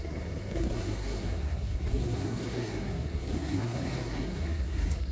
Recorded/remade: remade